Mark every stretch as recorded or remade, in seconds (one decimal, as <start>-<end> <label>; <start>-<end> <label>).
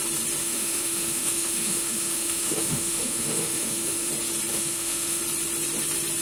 0.0-0.4 recorded; 0.4-4.1 remade; 4.1-4.5 recorded; 4.5-5.2 remade; 5.2-6.2 recorded